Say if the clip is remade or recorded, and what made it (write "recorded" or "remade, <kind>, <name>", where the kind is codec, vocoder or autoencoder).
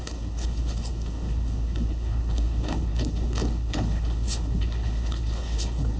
remade, codec, HILCodec